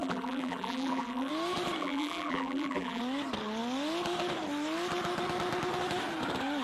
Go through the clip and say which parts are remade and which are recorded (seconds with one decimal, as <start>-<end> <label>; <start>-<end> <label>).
0.0-1.3 remade; 1.3-1.8 recorded; 1.8-3.0 remade; 3.0-6.6 recorded